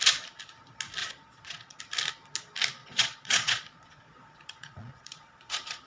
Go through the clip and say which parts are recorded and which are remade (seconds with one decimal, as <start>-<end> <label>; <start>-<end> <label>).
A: 0.0-1.0 recorded; 1.0-1.8 remade; 1.8-2.8 recorded; 2.8-5.9 remade